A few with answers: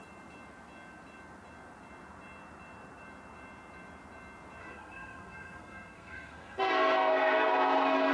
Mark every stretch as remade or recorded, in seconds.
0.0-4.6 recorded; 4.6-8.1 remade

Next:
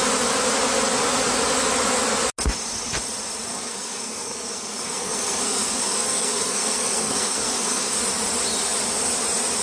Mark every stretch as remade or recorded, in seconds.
0.0-3.5 recorded; 3.5-8.0 remade; 8.0-9.6 recorded

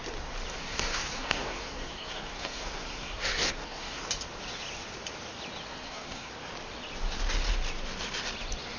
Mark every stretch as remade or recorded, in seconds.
0.0-0.5 recorded; 0.5-4.0 remade; 4.0-5.7 recorded; 5.7-6.3 remade; 6.3-8.8 recorded

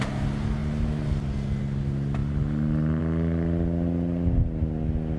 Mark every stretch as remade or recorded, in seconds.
0.0-5.2 recorded

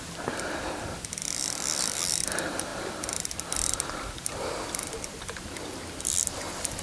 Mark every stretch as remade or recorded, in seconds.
0.0-6.8 recorded

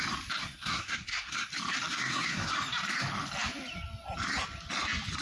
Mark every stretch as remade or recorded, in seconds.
0.0-0.4 recorded; 0.4-1.5 remade; 1.5-1.9 recorded; 1.9-2.5 remade; 2.5-5.2 recorded

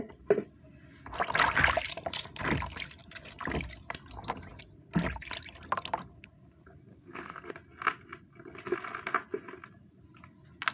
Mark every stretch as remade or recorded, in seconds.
0.0-6.9 recorded; 6.9-7.5 remade; 7.5-10.7 recorded